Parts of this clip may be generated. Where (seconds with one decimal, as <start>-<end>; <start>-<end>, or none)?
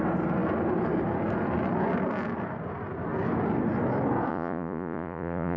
4.3-5.6